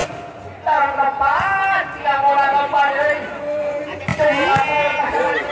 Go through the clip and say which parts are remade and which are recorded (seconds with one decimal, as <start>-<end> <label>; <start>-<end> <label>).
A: 0.0-5.5 recorded